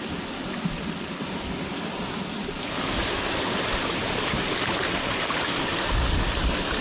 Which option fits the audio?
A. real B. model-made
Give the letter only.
A